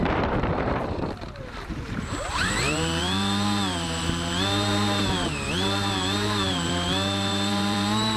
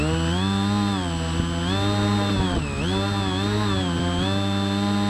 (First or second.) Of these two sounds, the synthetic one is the first